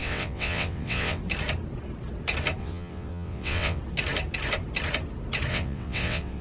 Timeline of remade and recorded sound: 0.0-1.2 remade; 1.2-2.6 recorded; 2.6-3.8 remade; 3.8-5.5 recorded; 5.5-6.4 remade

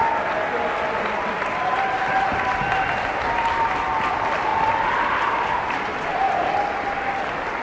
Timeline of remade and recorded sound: 0.0-7.6 recorded

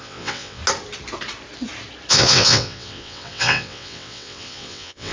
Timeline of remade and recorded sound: 0.0-0.6 remade; 0.6-2.1 recorded; 2.1-5.1 remade

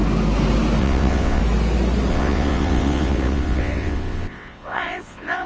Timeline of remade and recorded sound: 0.0-0.8 recorded; 0.8-1.4 remade; 1.4-2.1 recorded; 2.1-5.5 remade

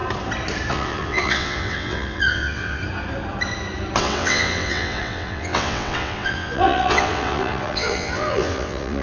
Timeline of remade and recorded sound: 0.0-0.7 recorded; 0.7-2.8 remade; 2.8-4.0 recorded; 4.0-9.0 remade

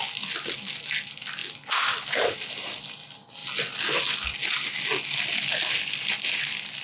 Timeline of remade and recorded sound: 0.0-6.8 recorded

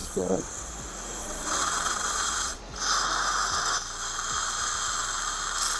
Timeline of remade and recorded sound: 0.0-0.7 remade; 0.7-1.2 recorded; 1.2-2.6 remade; 2.6-5.8 recorded

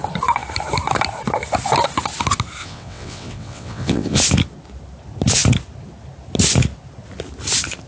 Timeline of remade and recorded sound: 0.0-2.6 recorded; 2.6-4.2 remade; 4.2-7.9 recorded